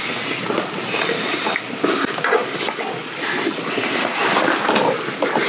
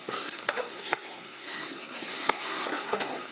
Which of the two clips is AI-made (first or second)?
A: second